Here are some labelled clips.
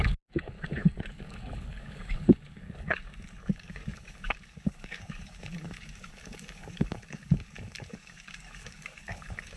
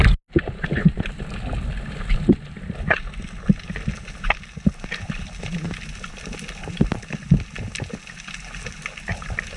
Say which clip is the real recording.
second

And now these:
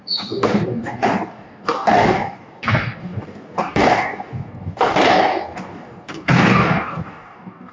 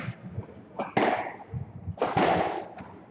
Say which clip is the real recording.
second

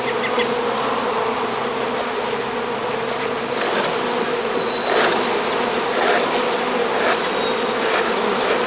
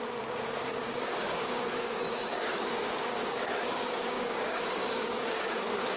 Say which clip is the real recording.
first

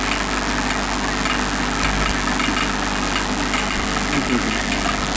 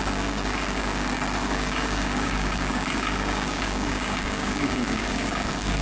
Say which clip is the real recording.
first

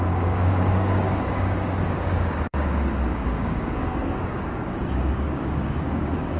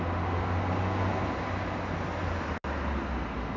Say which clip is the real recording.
second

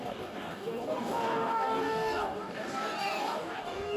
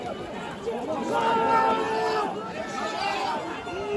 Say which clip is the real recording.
second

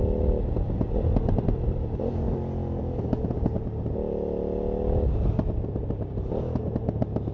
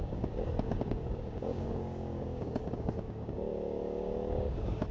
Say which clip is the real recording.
first